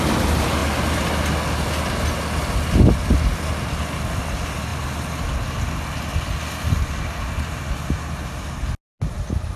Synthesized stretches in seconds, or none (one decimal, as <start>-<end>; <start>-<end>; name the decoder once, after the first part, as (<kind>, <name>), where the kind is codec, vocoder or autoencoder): none